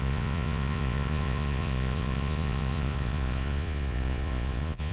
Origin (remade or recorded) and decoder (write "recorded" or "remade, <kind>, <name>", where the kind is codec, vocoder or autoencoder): remade, vocoder, Vocos